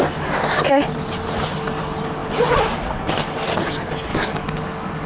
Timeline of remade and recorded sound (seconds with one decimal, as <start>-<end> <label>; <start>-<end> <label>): 0.0-4.1 recorded; 4.1-5.1 remade